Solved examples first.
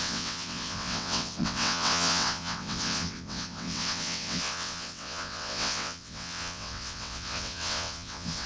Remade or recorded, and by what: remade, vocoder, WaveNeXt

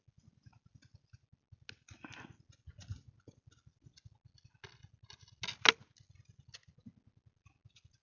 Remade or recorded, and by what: recorded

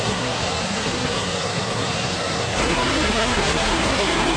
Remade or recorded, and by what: remade, codec, SNAC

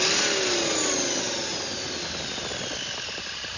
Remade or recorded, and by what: recorded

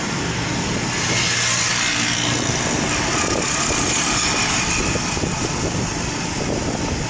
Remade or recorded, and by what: recorded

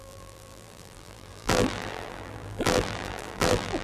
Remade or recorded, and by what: remade, vocoder, BigVGAN v2